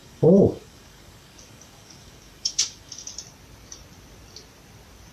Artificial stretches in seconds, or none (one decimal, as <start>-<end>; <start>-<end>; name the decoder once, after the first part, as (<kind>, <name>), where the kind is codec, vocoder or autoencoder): 0.0-3.1 (codec, DAC)

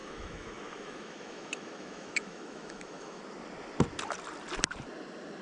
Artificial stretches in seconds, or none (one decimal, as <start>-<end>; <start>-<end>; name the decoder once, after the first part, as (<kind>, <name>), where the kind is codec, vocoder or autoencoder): 0.0-3.2 (autoencoder, DAC-VAE)